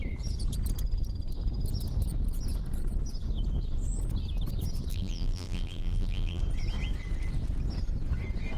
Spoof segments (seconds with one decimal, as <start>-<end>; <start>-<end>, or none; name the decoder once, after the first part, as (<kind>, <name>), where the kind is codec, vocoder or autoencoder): 4.9-6.4 (vocoder, BigVGAN v2)